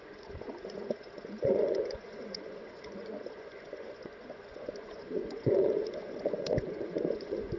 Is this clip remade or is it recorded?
remade